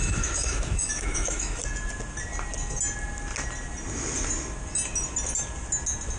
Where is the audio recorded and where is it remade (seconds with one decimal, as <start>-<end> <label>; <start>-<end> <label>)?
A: 0.0-1.6 remade; 1.6-6.2 recorded